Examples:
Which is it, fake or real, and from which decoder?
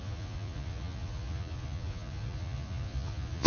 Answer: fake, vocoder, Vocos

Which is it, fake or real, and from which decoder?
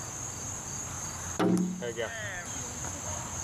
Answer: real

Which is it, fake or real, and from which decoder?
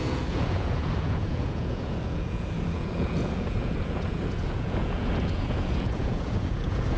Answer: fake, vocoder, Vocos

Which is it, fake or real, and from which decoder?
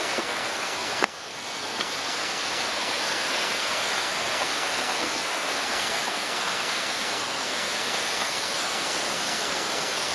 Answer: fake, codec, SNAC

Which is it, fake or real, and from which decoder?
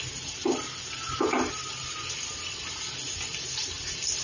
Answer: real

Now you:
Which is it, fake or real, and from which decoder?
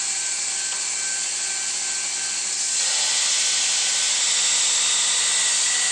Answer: real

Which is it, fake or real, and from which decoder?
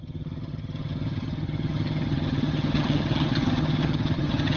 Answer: fake, vocoder, HiFi-GAN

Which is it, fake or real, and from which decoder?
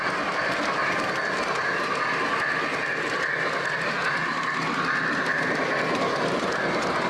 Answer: real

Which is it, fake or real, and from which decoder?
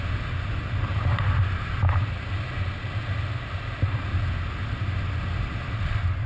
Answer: real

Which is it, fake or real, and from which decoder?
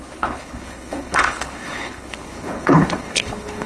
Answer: fake, codec, HILCodec